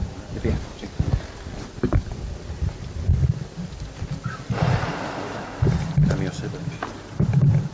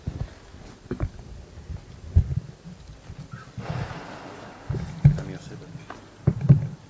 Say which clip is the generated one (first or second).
first